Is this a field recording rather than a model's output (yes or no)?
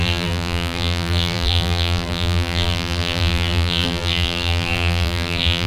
no